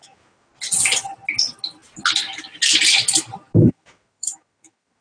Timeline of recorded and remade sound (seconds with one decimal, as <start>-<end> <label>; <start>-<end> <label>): 0.0-0.5 remade; 0.5-3.5 recorded; 3.5-5.0 remade